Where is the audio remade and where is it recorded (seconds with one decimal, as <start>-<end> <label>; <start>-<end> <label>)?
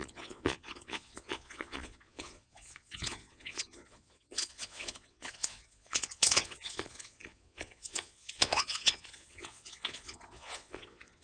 0.0-11.2 remade